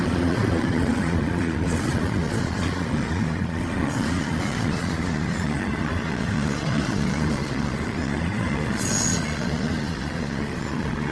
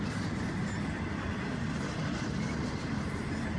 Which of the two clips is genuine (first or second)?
second